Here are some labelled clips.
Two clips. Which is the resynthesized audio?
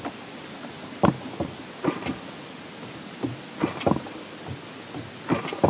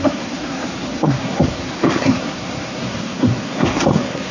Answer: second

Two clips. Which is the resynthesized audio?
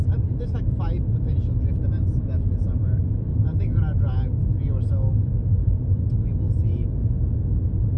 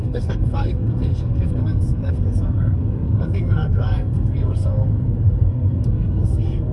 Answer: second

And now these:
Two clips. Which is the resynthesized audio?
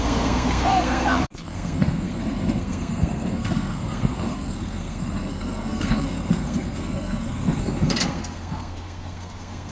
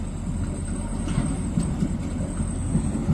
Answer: first